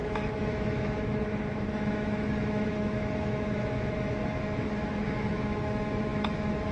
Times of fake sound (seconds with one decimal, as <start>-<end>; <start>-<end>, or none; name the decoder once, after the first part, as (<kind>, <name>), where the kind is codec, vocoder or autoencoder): 0.0-6.7 (autoencoder, DAC-VAE)